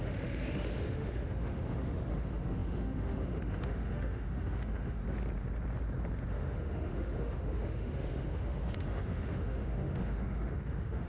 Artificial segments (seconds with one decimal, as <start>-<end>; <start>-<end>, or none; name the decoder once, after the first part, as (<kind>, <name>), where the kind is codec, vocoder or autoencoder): 0.0-5.0 (autoencoder, DAC-VAE); 6.3-11.1